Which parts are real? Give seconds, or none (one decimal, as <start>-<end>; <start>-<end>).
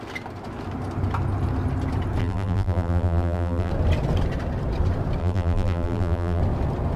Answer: 0.0-2.2; 3.7-5.2; 6.4-7.0